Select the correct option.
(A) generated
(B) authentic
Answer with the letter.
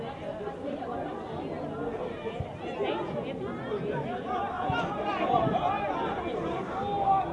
B